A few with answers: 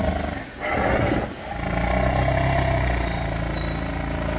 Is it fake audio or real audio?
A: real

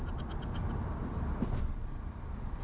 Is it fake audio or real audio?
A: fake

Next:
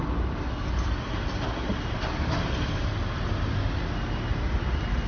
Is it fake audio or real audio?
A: real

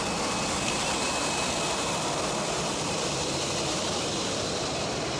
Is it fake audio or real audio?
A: fake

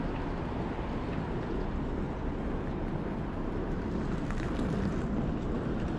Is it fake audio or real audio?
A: real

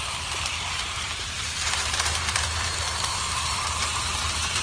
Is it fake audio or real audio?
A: fake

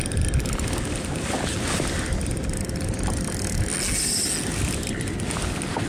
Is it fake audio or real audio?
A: real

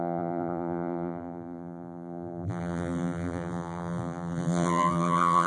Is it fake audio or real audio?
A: fake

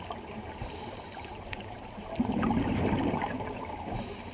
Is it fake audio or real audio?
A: fake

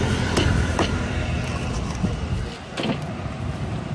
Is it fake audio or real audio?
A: real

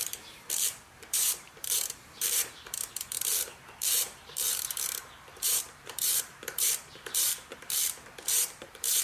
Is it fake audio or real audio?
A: fake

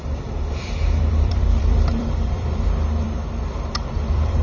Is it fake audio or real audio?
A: fake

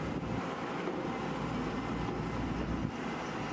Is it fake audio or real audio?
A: real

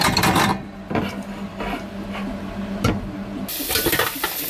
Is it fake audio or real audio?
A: real